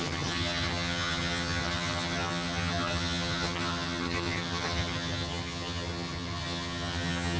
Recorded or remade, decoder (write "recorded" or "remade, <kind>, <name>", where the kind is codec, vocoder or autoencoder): remade, vocoder, HiFi-GAN